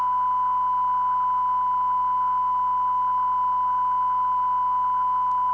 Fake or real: real